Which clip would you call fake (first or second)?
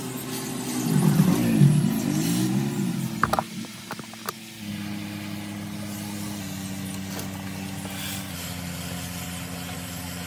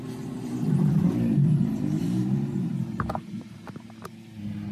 second